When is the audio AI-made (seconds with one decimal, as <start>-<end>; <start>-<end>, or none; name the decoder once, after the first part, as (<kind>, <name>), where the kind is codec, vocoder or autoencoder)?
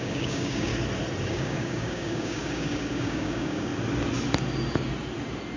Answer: 0.0-0.7 (codec, DAC); 1.3-3.7